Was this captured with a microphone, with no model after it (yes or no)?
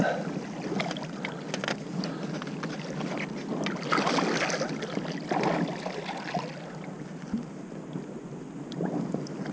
yes